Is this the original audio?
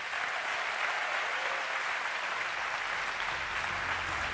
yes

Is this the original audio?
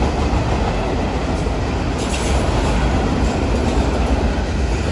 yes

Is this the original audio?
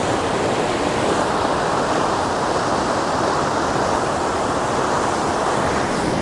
yes